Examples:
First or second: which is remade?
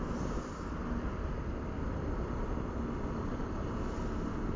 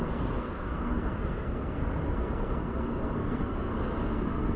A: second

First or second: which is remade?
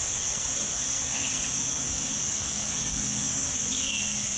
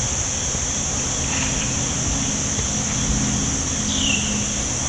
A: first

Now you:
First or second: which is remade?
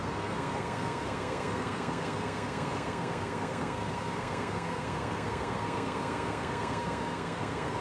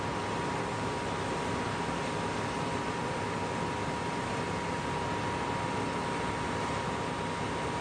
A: first